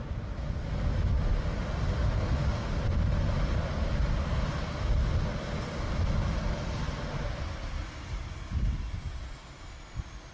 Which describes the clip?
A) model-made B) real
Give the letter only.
B